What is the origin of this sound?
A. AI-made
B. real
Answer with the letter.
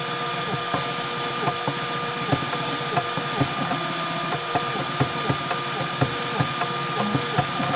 B